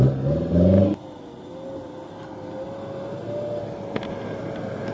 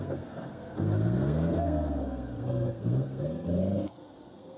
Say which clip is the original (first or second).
first